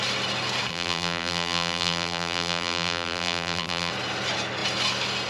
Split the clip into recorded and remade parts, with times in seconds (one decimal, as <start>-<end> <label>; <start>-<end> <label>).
0.0-0.7 recorded; 0.7-3.9 remade; 3.9-5.3 recorded